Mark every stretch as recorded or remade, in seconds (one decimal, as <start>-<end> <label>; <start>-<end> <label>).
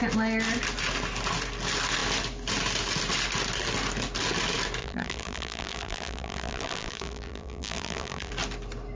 0.0-4.8 recorded; 4.8-8.3 remade; 8.3-9.0 recorded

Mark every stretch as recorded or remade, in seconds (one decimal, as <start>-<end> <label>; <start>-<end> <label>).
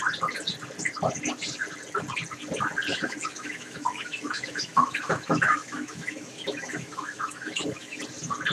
0.0-2.9 recorded; 2.9-8.0 remade; 8.0-8.5 recorded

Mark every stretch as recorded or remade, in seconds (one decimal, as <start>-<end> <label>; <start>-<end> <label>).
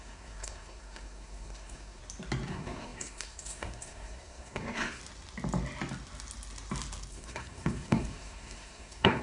0.0-2.0 remade; 2.0-2.5 recorded; 2.5-5.0 remade; 5.0-7.1 recorded; 7.1-9.2 remade